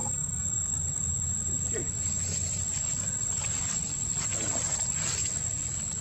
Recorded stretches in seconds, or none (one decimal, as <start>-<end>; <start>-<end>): 0.0-6.0